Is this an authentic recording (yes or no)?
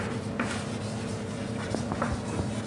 yes